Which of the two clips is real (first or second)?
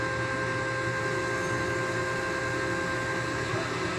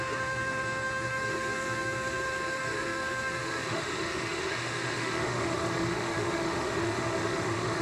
first